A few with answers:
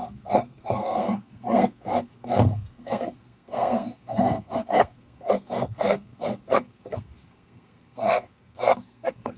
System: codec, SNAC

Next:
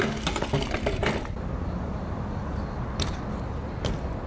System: none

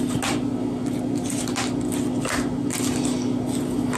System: none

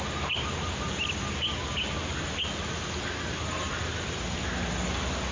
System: none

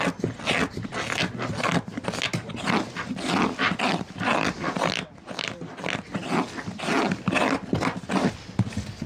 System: none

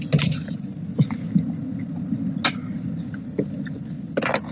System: none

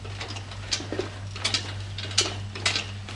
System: none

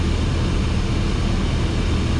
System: none